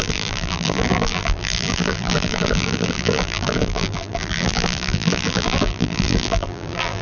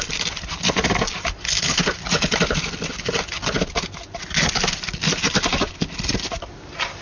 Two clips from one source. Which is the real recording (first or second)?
second